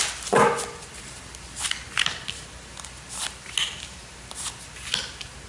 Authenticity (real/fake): real